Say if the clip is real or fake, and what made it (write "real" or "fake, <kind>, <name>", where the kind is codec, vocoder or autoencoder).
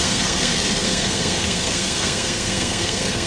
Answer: fake, codec, SNAC